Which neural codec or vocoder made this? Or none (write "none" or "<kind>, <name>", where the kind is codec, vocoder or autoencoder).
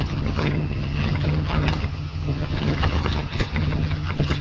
vocoder, HiFi-GAN